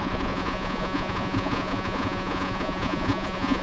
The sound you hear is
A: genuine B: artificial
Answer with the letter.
B